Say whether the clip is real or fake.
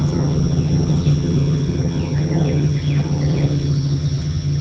fake